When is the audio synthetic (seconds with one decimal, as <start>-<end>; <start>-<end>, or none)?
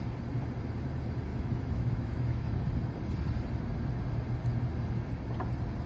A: 1.3-2.6